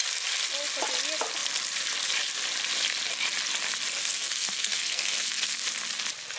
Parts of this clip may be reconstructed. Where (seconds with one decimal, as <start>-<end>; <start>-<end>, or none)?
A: 4.0-5.6